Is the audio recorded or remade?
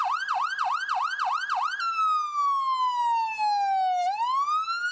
recorded